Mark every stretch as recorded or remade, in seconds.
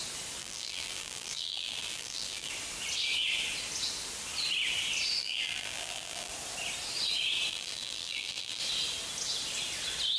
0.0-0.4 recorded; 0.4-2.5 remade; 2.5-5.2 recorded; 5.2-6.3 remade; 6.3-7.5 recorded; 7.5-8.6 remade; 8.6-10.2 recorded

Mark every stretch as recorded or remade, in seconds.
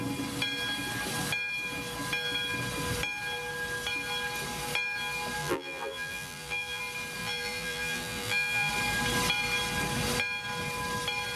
0.0-5.4 recorded; 5.4-6.8 remade; 6.8-7.2 recorded; 7.2-8.7 remade; 8.7-11.4 recorded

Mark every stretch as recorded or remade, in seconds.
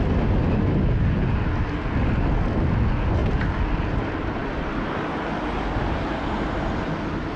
0.0-7.4 recorded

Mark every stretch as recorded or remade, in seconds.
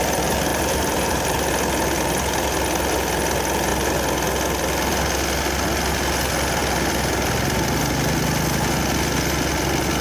0.0-0.5 recorded; 0.5-1.5 remade; 1.5-10.0 recorded